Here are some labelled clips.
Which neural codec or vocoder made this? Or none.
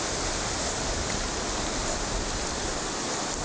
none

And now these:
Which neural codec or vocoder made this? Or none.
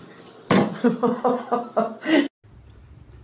none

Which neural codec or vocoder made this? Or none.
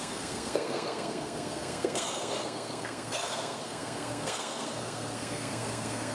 codec, SNAC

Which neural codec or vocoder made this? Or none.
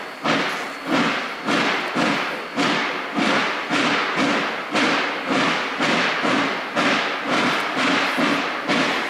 none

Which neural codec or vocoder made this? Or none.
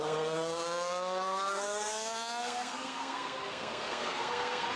codec, SNAC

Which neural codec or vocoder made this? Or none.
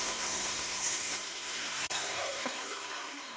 codec, SNAC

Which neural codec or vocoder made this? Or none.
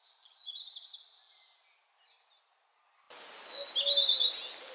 none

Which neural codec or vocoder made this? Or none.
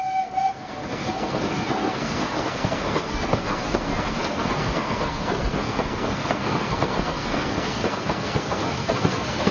codec, SNAC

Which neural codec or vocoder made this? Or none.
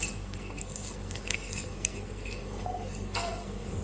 codec, SNAC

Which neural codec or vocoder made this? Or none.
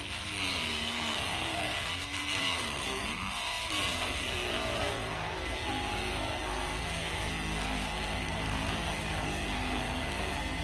codec, SNAC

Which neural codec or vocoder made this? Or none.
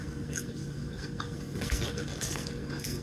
codec, SNAC